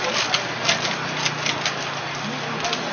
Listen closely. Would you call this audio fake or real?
real